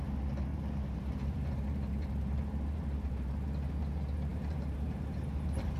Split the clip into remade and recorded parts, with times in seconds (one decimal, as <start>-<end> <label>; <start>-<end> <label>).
0.0-0.5 recorded; 0.5-3.3 remade; 3.3-4.3 recorded; 4.3-5.8 remade